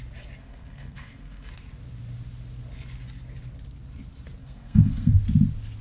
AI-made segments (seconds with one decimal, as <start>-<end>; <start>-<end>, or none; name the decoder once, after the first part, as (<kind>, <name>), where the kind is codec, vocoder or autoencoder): 0.4-1.5 (codec, SNAC); 4.4-5.2